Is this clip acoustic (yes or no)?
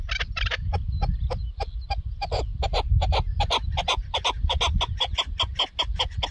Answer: yes